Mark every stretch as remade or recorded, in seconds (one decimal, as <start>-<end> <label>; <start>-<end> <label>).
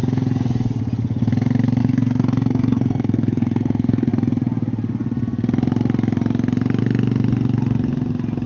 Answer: 0.0-1.8 recorded; 1.8-4.1 remade; 4.1-8.5 recorded